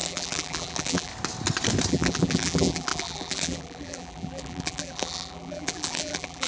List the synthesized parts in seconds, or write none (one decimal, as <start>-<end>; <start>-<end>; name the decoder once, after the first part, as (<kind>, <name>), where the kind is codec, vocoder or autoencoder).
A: 0.0-1.1 (vocoder, BigVGAN v2); 1.9-6.5

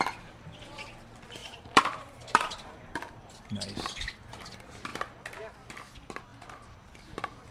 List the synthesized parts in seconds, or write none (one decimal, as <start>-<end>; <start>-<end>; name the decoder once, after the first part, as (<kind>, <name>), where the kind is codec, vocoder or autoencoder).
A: 1.4-3.5 (vocoder, BigVGAN v2)

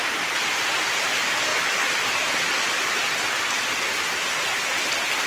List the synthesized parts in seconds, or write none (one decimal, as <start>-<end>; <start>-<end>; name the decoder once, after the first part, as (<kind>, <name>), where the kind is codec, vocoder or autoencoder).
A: none

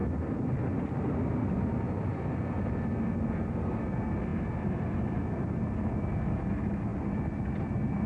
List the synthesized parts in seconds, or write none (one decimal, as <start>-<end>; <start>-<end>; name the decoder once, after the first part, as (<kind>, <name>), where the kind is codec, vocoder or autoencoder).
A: none

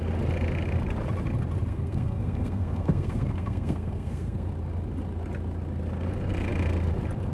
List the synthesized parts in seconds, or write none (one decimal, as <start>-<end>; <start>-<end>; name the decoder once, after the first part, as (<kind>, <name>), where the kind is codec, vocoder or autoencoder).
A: 1.7-4.5 (codec, SNAC)